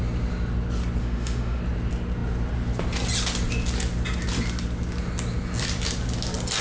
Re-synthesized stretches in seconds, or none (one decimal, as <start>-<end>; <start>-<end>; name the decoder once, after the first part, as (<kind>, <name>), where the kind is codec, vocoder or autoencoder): 1.0-1.6 (autoencoder, DAC-VAE)